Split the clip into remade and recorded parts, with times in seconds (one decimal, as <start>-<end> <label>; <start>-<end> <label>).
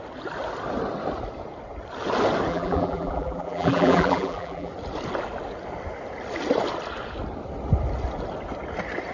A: 0.0-2.5 recorded; 2.5-4.7 remade; 4.7-9.1 recorded